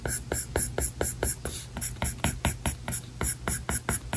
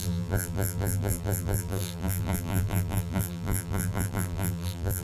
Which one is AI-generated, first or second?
second